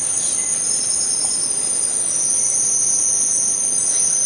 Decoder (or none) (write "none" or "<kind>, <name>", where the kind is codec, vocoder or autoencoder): none